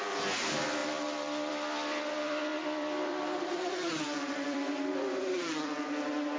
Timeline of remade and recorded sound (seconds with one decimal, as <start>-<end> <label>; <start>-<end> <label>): 0.0-0.8 recorded; 0.8-1.5 remade; 1.5-2.5 recorded; 2.5-5.2 remade; 5.2-6.4 recorded